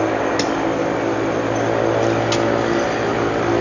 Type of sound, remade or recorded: recorded